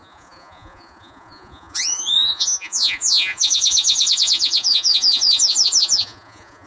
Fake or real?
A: fake